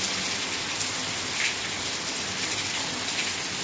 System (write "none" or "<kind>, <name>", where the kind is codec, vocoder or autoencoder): none